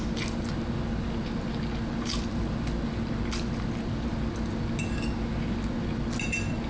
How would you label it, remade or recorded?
recorded